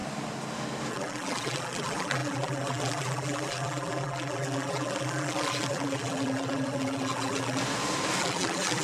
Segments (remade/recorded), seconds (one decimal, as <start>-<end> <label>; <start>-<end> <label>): 0.0-0.9 recorded; 0.9-7.6 remade; 7.6-8.2 recorded; 8.2-8.8 remade